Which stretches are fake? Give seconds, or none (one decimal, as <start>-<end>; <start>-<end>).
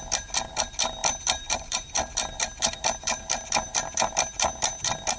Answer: 1.0-4.1